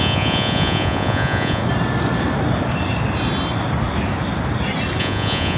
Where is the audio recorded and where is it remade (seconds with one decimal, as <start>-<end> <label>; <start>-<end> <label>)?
0.0-1.6 remade; 1.6-5.0 recorded; 5.0-5.6 remade